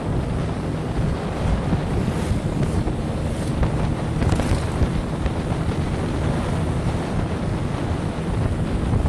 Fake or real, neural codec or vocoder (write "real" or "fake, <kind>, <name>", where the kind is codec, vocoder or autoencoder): real